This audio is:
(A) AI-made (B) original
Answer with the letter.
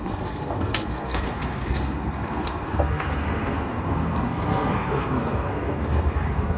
A